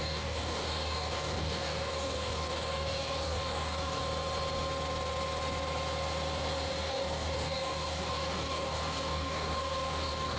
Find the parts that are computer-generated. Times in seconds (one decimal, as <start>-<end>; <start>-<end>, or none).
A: 0.0-4.0; 6.7-10.4